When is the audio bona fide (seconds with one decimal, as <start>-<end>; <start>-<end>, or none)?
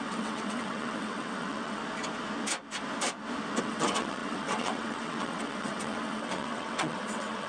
1.8-3.6